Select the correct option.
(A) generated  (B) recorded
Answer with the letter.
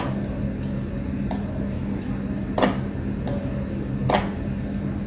B